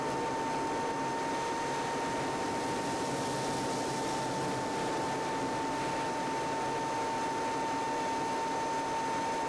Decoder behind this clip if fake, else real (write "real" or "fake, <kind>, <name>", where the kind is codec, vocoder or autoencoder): real